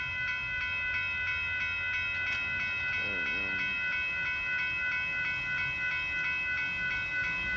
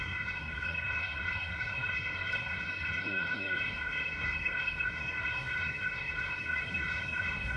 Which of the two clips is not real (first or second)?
second